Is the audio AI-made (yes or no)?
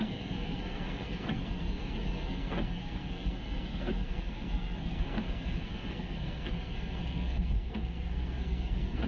yes